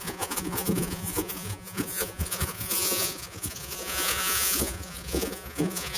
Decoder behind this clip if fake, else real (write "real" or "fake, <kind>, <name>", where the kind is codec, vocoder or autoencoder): fake, vocoder, Vocos